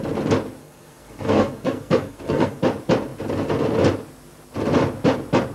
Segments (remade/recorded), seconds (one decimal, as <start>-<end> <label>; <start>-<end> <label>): 0.0-0.6 recorded; 0.6-2.6 remade; 2.6-5.5 recorded

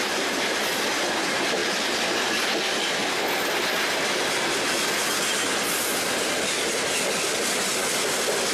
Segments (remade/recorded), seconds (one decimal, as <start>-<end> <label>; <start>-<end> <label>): 0.0-8.5 recorded

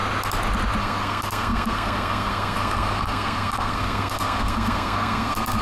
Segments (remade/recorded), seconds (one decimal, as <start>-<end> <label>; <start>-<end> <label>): 0.0-0.8 recorded; 0.8-5.6 remade

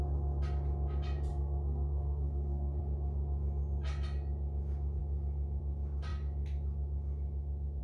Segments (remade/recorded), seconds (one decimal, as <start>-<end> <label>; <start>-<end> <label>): 0.0-1.3 recorded; 1.3-2.8 remade; 2.8-7.8 recorded

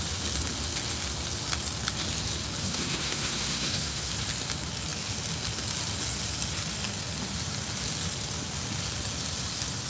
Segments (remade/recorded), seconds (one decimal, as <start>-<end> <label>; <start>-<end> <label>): 0.0-2.6 recorded; 2.6-4.1 remade; 4.1-9.9 recorded